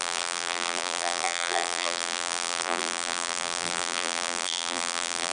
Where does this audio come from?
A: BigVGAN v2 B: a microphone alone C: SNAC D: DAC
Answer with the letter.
A